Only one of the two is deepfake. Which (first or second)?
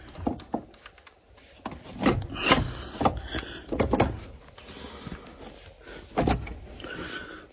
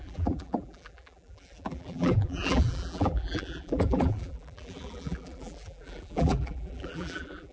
second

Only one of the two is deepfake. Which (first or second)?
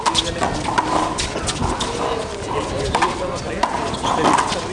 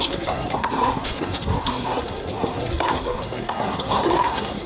second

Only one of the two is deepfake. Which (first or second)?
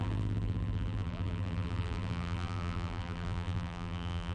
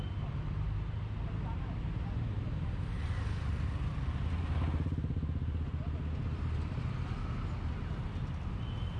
first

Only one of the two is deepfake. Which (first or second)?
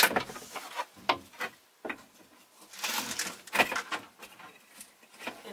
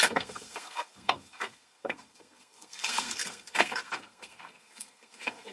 second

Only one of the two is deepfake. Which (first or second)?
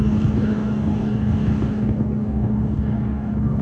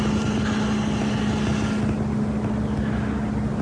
first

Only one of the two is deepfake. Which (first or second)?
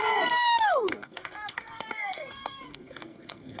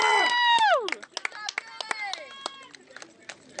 first